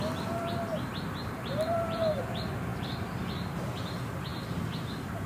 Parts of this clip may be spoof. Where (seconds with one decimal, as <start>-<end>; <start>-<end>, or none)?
0.4-2.2